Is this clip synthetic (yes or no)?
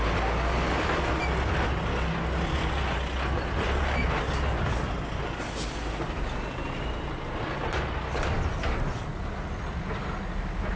no